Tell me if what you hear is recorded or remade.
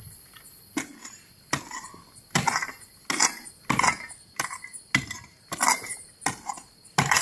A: recorded